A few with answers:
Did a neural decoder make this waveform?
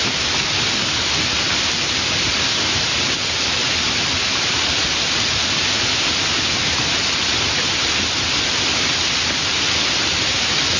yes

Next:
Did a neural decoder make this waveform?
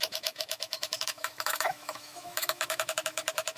yes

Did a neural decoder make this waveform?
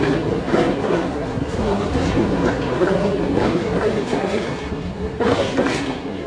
yes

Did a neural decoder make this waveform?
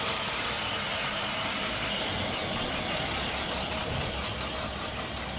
no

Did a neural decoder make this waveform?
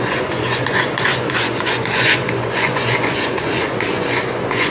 yes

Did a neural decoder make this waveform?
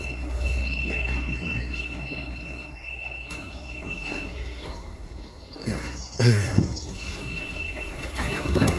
yes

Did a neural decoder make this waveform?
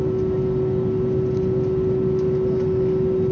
no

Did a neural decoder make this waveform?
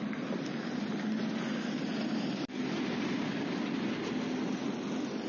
no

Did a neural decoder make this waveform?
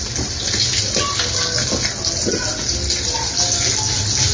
no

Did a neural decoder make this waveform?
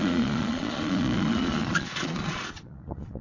yes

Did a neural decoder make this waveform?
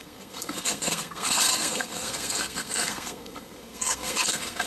yes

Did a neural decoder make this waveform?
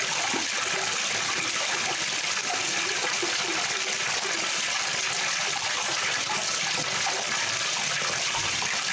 no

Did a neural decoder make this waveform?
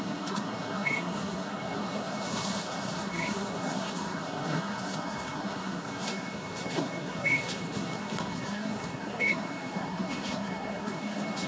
yes